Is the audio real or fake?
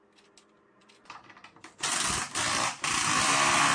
real